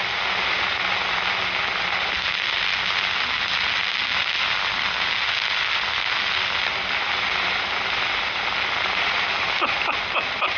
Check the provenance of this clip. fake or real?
real